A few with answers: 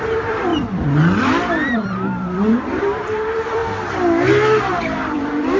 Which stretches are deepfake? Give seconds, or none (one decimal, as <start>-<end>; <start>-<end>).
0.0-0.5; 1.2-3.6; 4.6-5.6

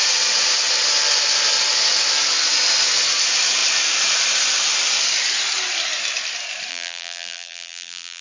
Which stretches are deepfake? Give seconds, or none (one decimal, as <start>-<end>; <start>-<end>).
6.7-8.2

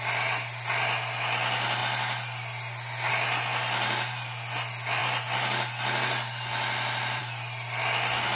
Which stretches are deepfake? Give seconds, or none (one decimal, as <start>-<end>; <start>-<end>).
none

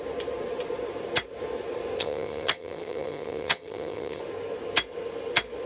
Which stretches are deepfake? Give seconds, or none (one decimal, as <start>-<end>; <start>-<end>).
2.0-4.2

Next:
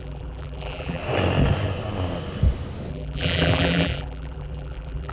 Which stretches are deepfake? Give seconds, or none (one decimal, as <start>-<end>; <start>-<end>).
0.0-1.0; 2.9-5.1

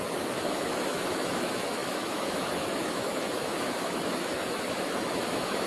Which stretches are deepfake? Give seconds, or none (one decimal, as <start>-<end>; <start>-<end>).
0.0-5.7

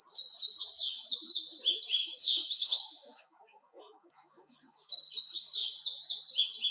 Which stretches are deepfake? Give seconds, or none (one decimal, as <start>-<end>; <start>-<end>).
2.0-4.9

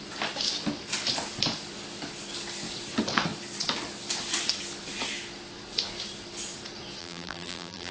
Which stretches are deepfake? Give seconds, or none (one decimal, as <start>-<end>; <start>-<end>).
7.0-7.9